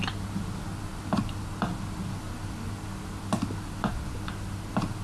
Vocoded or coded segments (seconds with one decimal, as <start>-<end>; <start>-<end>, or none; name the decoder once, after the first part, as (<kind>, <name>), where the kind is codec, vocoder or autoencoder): none